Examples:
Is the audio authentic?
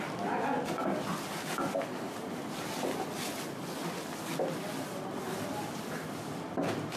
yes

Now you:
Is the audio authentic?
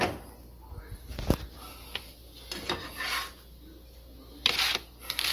yes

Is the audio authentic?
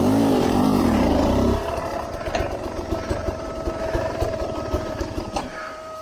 no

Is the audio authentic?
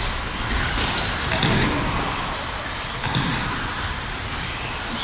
no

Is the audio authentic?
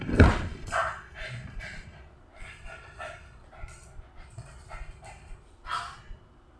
no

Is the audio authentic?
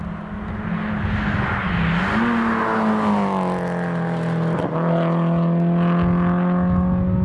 yes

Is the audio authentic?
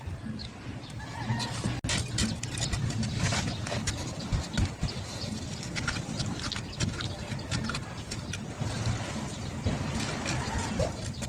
yes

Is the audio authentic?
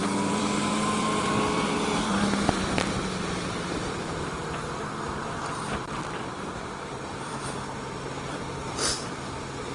no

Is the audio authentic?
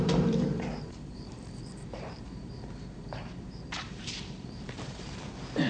no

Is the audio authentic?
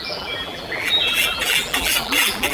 no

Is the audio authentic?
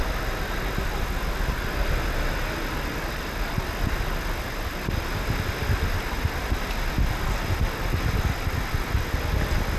yes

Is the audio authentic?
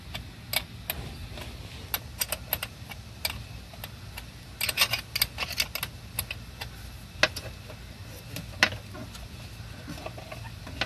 yes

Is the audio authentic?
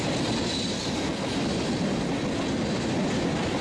yes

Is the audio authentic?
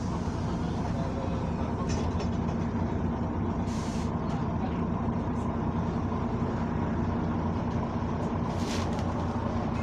no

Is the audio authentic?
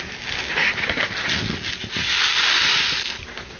yes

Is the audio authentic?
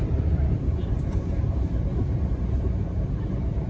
no